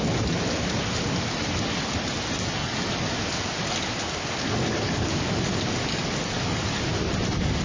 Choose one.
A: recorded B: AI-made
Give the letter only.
A